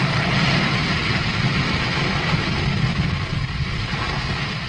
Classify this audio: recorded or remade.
recorded